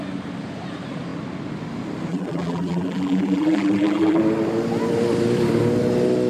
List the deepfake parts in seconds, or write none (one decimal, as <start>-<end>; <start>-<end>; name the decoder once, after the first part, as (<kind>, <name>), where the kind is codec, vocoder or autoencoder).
2.1-4.2 (vocoder, BigVGAN v2)